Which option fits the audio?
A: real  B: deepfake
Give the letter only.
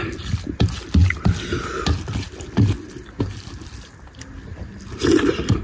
A